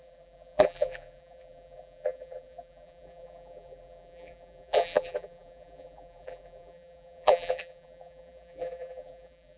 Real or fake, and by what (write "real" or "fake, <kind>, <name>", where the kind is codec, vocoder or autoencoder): fake, vocoder, BigVGAN v2